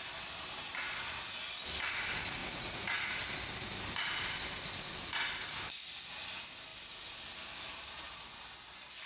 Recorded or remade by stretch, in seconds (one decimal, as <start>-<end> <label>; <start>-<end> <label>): 0.0-2.4 recorded; 2.4-3.2 remade; 3.2-9.1 recorded